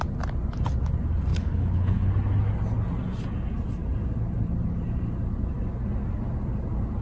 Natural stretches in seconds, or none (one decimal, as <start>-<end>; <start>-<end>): 0.0-1.3; 2.1-7.0

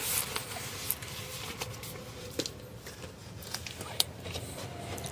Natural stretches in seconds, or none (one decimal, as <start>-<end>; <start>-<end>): 0.0-3.2; 3.7-5.1

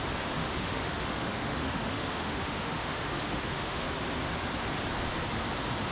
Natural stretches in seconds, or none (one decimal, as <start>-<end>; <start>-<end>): 0.0-0.4; 3.9-5.9

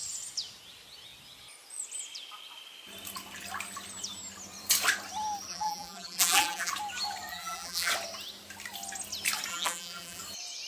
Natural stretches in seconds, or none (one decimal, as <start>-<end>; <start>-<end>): 0.0-5.5; 6.7-7.3; 7.9-9.5; 10.2-10.7